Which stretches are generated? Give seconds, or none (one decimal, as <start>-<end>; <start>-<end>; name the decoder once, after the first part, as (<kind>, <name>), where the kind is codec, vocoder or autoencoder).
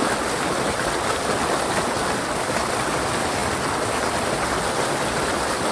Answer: none